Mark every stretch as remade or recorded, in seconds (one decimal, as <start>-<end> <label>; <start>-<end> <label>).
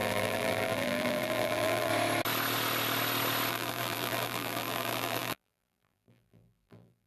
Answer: 0.0-1.9 remade; 1.9-3.5 recorded; 3.5-7.1 remade